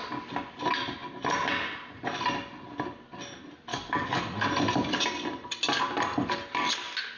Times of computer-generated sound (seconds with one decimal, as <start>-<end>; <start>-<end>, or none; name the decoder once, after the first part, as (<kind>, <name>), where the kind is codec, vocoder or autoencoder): 3.7-4.2 (codec, DAC)

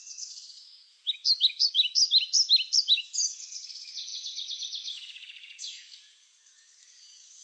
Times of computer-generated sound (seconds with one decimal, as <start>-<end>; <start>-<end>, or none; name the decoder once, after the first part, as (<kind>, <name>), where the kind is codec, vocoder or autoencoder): 0.0-2.0 (codec, DAC); 2.8-7.4